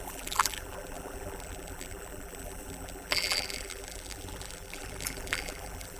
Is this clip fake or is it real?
fake